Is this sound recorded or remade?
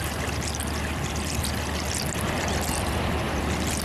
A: recorded